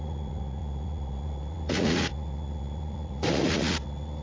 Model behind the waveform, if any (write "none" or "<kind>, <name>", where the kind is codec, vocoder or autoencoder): vocoder, Vocos